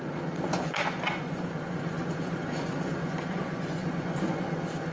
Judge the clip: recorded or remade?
remade